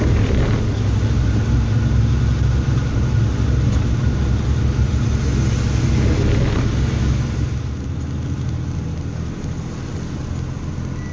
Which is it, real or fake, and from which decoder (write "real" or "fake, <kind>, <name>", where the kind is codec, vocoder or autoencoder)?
real